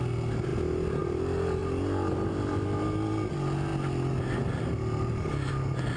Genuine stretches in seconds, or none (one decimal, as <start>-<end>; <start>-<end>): 0.0-6.0